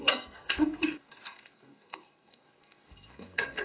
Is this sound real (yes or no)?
no